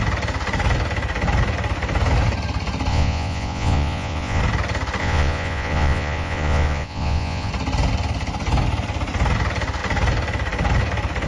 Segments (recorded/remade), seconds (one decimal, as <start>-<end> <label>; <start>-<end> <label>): 0.0-2.9 recorded; 2.9-4.4 remade; 4.4-5.0 recorded; 5.0-7.5 remade; 7.5-11.3 recorded